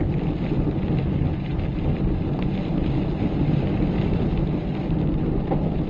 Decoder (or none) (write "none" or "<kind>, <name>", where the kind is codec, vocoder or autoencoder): none